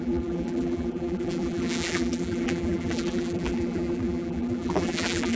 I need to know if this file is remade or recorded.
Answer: remade